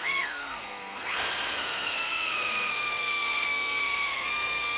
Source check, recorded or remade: remade